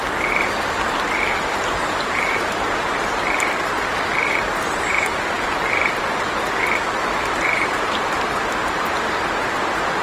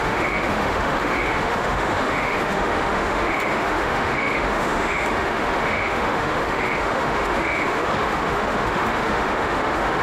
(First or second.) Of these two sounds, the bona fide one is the first